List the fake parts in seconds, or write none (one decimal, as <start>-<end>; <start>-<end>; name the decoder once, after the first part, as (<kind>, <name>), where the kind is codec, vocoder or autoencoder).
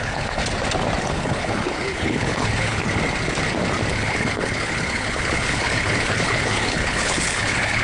0.0-0.4 (codec, HILCodec); 1.0-2.8; 3.9-7.8